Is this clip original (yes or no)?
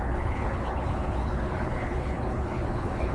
no